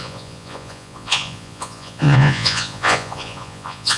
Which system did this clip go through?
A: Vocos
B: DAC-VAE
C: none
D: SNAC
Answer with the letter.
A